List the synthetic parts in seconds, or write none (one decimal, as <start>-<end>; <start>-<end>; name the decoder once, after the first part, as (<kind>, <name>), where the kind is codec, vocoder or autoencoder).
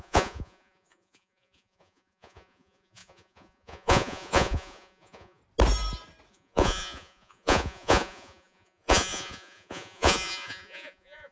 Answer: 0.0-5.4 (vocoder, Vocos); 6.3-11.3